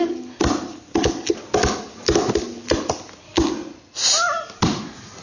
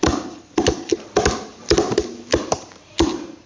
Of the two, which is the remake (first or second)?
second